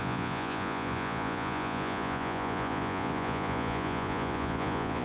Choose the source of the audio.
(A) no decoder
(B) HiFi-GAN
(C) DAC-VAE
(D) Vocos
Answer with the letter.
D